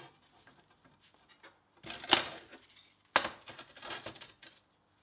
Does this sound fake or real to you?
real